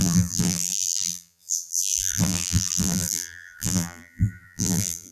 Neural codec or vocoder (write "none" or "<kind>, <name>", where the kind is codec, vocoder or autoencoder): vocoder, BigVGAN v2